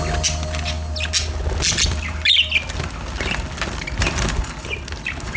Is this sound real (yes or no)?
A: yes